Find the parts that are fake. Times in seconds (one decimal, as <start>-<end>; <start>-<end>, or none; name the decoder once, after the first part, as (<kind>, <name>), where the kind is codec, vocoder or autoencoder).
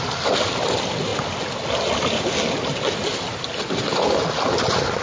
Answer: none